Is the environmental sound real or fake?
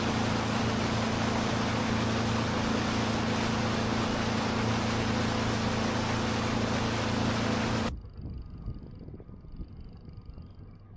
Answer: real